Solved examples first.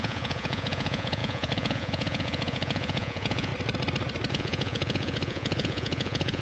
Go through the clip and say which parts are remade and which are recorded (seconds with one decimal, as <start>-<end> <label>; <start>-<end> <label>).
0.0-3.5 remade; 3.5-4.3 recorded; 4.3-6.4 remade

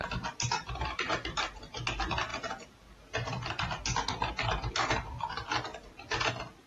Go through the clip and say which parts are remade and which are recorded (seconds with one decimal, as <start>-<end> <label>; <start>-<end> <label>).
0.0-0.6 recorded; 0.6-1.4 remade; 1.4-6.7 recorded

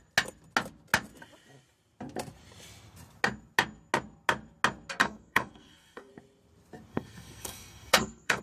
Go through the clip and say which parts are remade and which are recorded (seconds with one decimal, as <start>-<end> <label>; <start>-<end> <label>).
0.0-5.0 recorded; 5.0-6.1 remade; 6.1-6.9 recorded; 6.9-8.4 remade

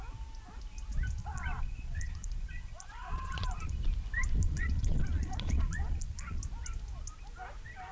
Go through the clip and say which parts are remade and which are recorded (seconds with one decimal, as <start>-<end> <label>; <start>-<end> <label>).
0.0-1.2 recorded; 1.2-3.7 remade; 3.7-4.4 recorded; 4.4-6.4 remade; 6.4-7.9 recorded

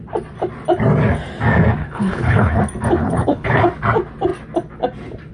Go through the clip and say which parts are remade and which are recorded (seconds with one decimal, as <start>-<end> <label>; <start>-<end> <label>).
0.0-1.8 recorded; 1.8-2.6 remade; 2.6-3.0 recorded; 3.0-3.6 remade; 3.6-5.3 recorded

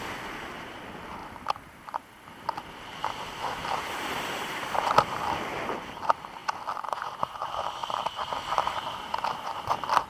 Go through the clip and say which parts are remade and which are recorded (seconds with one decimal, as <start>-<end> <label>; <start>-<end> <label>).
0.0-10.1 recorded